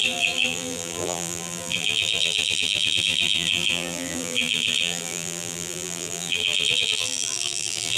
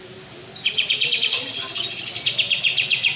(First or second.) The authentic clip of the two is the second